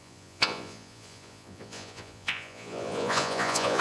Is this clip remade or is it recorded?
remade